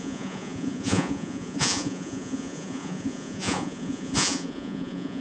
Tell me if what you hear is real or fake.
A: fake